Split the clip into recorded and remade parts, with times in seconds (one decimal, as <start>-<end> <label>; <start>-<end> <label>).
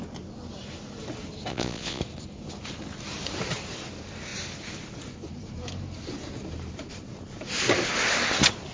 0.0-1.5 recorded; 1.5-2.0 remade; 2.0-8.7 recorded